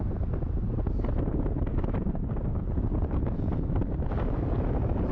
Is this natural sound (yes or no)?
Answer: no